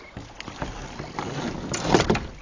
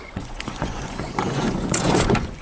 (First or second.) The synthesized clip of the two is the second